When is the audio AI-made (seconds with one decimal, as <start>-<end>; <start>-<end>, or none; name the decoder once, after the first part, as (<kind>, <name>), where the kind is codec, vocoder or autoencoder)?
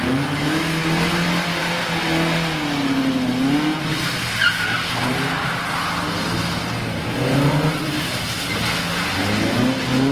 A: none